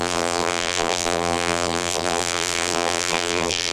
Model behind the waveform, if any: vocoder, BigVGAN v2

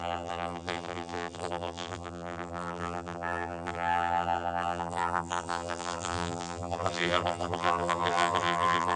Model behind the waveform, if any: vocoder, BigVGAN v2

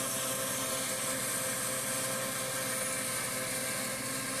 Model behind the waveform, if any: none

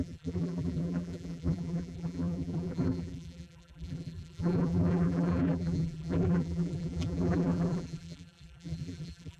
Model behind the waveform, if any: vocoder, BigVGAN v2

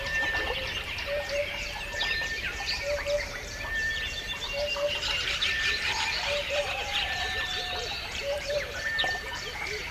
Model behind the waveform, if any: vocoder, BigVGAN v2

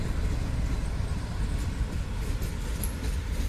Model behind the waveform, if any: none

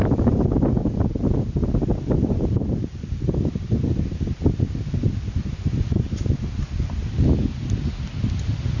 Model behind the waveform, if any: none